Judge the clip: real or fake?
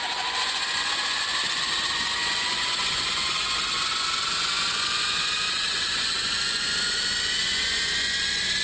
fake